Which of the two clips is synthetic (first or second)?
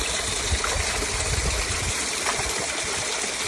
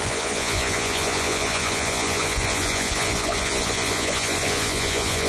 second